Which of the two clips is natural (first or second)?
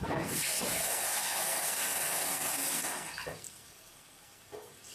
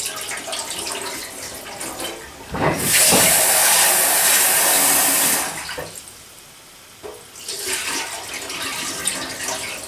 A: second